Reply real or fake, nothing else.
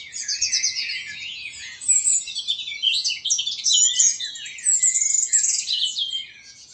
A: fake